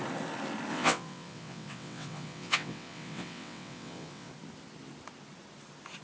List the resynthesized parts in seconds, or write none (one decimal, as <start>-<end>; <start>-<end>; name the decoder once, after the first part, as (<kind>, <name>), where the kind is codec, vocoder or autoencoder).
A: 0.7-4.3 (vocoder, WaveNeXt)